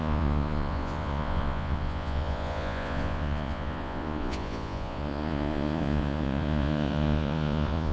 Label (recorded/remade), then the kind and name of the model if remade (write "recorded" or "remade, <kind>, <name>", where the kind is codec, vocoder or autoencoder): remade, vocoder, Vocos